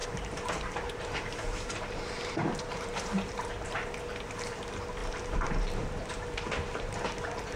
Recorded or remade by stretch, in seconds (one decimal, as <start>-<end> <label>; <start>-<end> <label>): 0.0-3.4 remade; 3.4-5.0 recorded; 5.0-7.0 remade; 7.0-7.6 recorded